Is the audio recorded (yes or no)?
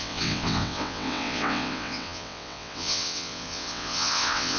no